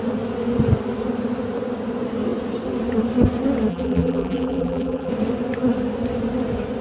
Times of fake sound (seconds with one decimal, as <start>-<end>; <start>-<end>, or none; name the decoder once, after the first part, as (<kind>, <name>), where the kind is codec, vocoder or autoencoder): 3.7-5.1 (vocoder, BigVGAN v2)